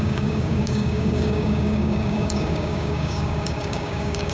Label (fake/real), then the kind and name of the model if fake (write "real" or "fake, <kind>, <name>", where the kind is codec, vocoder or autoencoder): fake, codec, DAC